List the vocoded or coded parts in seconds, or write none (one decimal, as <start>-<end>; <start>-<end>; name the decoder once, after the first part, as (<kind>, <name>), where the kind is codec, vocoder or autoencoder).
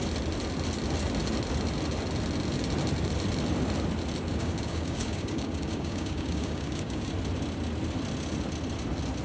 4.3-7.1 (codec, DAC)